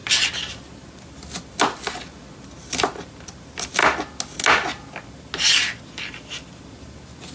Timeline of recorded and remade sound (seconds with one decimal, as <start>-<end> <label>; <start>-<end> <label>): 0.0-0.8 remade; 0.8-7.3 recorded